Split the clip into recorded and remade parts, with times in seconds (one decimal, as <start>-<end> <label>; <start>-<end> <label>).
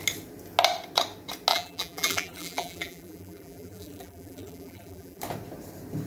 0.0-1.5 recorded; 1.5-5.2 remade; 5.2-6.1 recorded